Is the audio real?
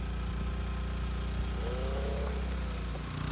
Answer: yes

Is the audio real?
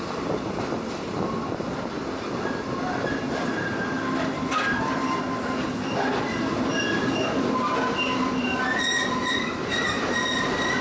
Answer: yes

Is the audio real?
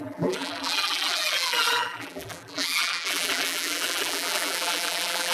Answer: no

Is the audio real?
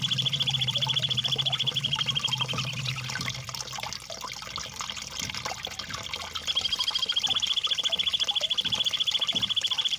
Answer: yes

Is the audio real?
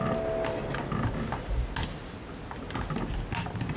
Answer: yes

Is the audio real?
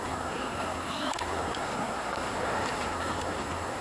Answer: no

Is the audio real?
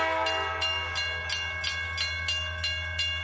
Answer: yes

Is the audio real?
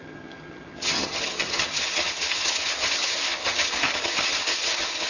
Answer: no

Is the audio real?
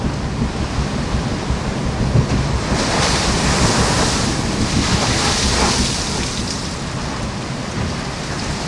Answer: yes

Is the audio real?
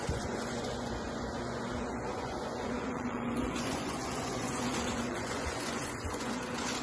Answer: no